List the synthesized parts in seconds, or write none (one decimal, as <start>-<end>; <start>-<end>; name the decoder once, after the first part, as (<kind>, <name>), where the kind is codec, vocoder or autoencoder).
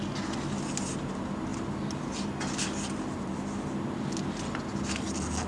none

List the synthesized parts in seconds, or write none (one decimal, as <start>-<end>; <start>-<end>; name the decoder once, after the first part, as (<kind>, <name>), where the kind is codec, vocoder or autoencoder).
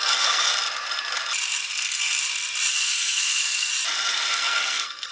0.0-0.5 (codec, SNAC); 1.7-2.2; 2.7-3.7; 4.3-5.1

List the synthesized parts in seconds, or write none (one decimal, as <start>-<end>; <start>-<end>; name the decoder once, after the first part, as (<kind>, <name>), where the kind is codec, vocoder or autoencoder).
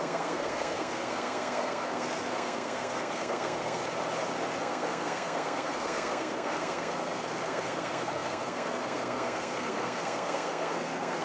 0.0-3.8 (codec, SNAC); 4.6-11.2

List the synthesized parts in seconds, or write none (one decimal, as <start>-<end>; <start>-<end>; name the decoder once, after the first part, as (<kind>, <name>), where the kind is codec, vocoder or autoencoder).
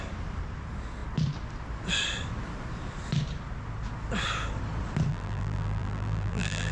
5.1-6.7 (vocoder, BigVGAN v2)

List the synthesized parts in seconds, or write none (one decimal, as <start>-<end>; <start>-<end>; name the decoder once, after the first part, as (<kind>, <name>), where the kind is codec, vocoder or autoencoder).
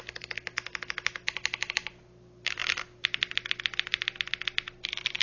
none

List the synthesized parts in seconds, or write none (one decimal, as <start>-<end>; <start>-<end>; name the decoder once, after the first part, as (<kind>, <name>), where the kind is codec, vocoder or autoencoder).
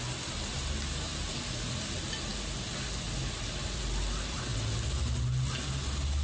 none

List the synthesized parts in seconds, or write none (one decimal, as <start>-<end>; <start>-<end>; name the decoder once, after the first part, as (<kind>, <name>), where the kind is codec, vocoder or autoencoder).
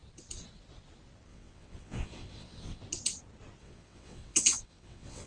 1.3-2.8 (vocoder, WaveNeXt); 3.6-5.3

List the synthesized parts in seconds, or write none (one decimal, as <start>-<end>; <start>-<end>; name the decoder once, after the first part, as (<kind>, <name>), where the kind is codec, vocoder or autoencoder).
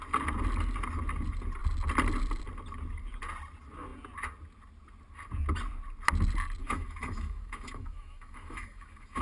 6.6-9.2 (autoencoder, DAC-VAE)